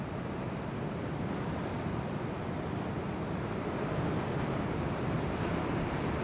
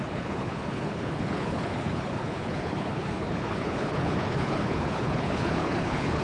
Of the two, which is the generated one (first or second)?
second